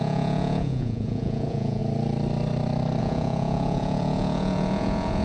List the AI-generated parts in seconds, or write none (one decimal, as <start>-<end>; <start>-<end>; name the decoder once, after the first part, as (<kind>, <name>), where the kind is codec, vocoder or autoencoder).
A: 0.0-1.8 (vocoder, Vocos); 3.0-5.2